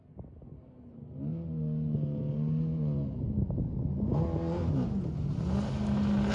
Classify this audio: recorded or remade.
recorded